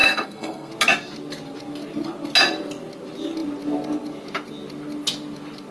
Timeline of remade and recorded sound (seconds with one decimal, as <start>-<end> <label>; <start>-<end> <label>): 0.0-0.7 remade; 0.7-5.7 recorded